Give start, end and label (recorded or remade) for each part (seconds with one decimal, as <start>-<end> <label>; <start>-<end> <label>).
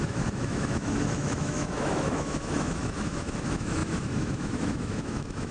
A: 0.0-5.5 remade